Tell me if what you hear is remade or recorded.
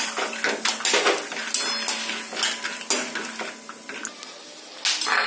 recorded